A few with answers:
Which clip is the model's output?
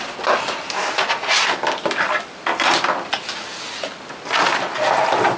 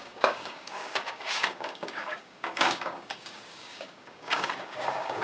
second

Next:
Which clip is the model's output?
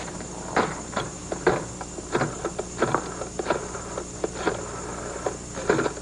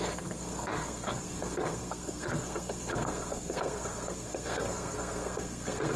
second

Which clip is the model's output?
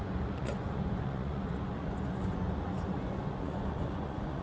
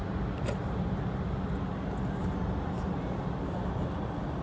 first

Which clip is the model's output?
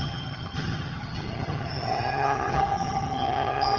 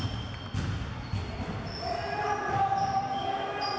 first